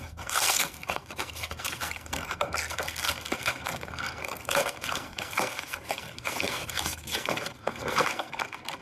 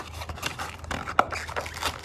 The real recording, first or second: second